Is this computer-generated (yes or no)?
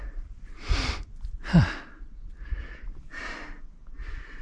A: no